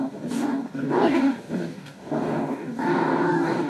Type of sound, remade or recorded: remade